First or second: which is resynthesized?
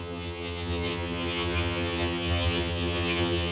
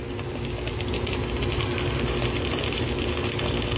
first